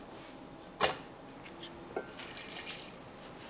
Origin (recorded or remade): recorded